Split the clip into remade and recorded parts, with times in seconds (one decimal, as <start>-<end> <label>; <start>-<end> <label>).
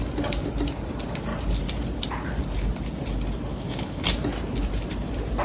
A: 0.0-3.5 recorded; 3.5-4.0 remade; 4.0-5.4 recorded